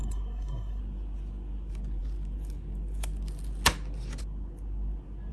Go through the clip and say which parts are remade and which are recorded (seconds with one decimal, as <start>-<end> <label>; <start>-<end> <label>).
0.0-0.8 remade; 0.8-5.3 recorded